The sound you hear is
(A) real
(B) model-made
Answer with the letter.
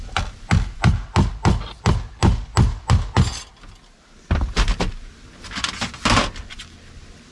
A